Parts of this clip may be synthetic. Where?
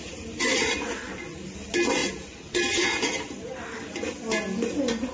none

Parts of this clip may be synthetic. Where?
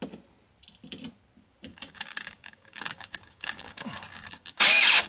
1.7-5.1 (codec, DAC)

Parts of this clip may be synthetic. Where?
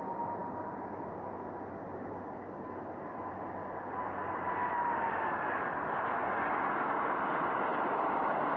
none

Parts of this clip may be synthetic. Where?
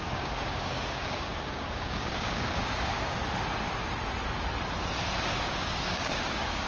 0.0-3.2 (codec, DAC); 5.2-6.7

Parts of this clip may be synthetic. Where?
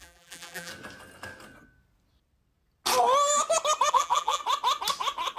0.0-0.7 (vocoder, BigVGAN v2); 3.9-4.4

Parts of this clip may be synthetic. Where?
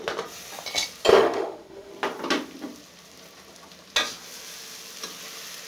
1.1-1.9 (autoencoder, DAC-VAE)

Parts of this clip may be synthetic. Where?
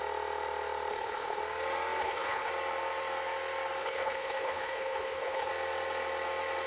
0.9-1.4 (codec, HILCodec); 2.0-2.5; 3.8-5.5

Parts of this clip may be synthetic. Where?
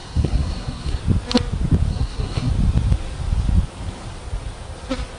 0.0-1.0 (codec, SNAC); 1.9-2.5